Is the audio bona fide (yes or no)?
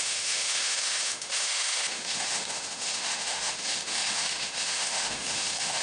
no